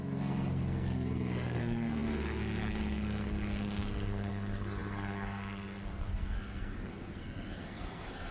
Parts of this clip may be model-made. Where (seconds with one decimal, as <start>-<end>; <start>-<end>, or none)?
0.0-8.3